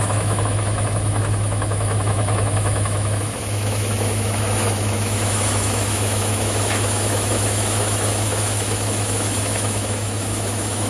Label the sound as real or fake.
fake